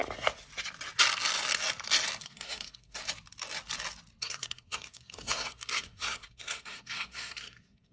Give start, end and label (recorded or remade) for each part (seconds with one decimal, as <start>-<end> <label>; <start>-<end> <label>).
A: 0.0-2.2 recorded; 2.2-3.0 remade; 3.0-4.2 recorded; 4.2-7.9 remade